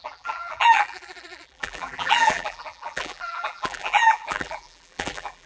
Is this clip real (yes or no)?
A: no